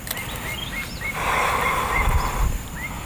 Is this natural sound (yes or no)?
yes